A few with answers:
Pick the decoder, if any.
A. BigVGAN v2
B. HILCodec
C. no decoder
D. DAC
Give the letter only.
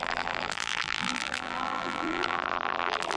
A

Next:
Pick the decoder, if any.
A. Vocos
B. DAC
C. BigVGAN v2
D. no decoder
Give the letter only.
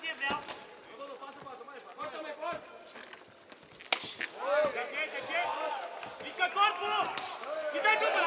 D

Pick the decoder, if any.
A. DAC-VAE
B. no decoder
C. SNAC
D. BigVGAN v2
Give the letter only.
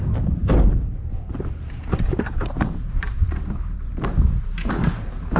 D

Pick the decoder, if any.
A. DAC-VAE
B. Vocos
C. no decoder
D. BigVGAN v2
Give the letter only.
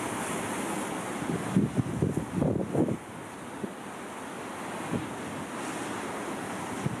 C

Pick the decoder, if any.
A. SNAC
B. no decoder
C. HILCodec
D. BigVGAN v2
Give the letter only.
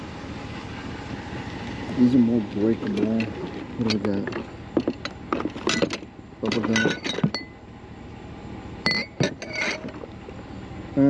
B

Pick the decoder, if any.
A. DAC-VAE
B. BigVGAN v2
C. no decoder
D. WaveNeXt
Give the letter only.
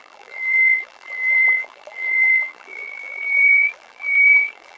B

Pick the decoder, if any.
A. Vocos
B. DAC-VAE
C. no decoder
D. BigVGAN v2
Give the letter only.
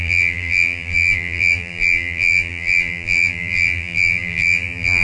D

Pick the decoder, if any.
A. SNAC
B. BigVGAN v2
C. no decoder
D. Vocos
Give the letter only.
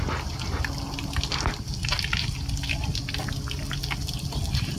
C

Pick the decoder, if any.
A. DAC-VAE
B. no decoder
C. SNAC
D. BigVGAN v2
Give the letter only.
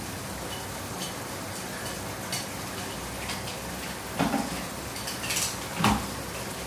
B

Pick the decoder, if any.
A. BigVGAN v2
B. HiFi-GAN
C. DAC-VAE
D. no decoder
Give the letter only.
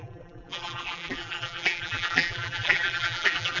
A